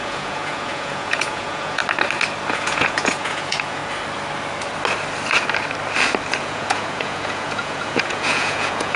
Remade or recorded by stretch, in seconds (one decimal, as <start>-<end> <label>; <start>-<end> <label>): 0.0-1.8 remade; 1.8-2.5 recorded; 2.5-3.8 remade; 3.8-6.4 recorded; 6.4-9.0 remade